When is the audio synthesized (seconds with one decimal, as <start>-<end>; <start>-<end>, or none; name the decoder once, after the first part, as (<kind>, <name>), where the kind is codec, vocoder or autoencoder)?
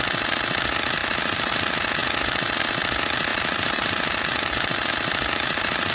1.0-1.5 (vocoder, BigVGAN v2); 3.3-5.9